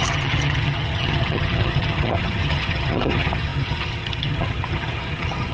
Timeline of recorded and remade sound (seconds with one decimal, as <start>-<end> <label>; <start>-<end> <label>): 0.0-5.5 remade

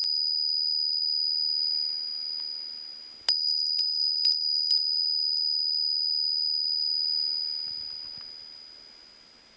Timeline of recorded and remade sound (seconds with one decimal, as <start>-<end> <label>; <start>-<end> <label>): 0.0-9.6 recorded